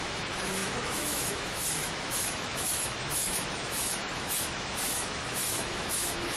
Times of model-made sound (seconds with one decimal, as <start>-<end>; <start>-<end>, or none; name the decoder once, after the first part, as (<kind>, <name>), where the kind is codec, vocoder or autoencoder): 0.0-6.4 (autoencoder, DAC-VAE)